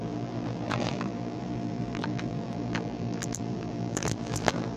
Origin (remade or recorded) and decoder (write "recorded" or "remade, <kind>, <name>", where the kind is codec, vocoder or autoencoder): remade, vocoder, BigVGAN v2